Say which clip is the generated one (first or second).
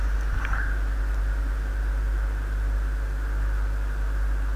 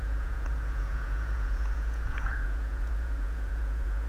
second